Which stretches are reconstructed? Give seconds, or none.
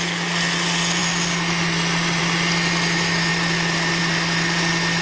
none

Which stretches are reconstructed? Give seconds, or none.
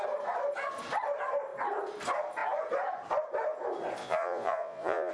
4.0-5.1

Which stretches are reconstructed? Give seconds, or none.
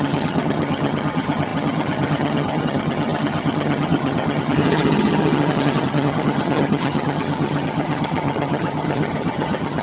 0.0-9.8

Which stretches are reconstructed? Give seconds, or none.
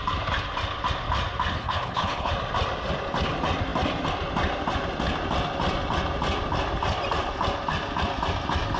1.5-2.3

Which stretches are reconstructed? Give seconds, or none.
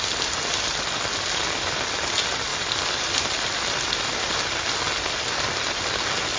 2.5-4.3